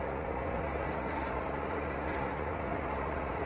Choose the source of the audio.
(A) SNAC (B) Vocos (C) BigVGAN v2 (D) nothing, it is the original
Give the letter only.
B